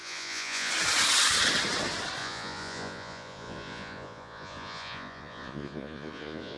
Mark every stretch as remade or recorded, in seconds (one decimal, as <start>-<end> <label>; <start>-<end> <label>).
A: 0.0-0.7 remade; 0.7-2.2 recorded; 2.2-6.6 remade